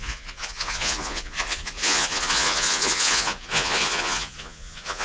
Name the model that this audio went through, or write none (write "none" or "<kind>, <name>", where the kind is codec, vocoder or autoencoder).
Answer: vocoder, Vocos